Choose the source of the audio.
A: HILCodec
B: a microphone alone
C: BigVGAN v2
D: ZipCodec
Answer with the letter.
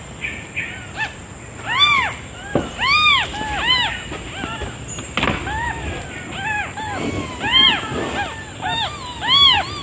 B